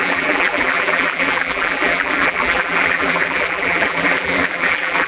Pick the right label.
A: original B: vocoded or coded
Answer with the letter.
B